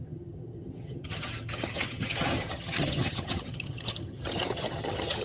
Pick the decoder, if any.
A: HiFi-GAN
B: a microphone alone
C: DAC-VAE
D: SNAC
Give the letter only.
A